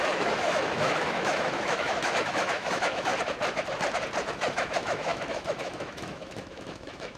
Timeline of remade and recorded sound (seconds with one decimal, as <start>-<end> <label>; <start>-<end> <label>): 0.0-3.1 remade; 3.1-4.3 recorded; 4.3-7.2 remade